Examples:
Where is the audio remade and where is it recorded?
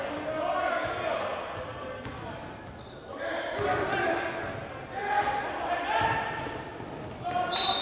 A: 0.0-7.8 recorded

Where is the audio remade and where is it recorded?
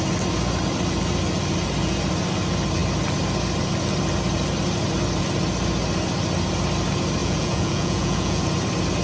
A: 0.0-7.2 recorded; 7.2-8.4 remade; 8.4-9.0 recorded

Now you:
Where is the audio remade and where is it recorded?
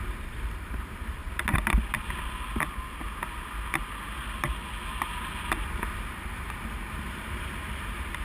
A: 0.0-1.2 remade; 1.2-6.1 recorded; 6.1-8.2 remade